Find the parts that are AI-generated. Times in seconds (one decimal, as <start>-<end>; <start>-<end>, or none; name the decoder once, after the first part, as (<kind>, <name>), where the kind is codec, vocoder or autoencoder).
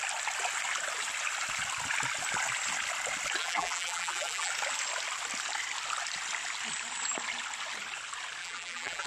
3.4-4.5 (vocoder, BigVGAN v2); 8.4-9.1